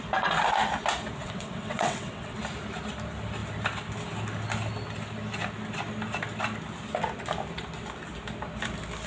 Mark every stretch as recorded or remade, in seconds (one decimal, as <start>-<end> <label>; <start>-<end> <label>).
0.0-1.2 recorded; 1.2-2.4 remade; 2.4-9.1 recorded